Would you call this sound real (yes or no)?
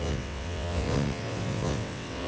no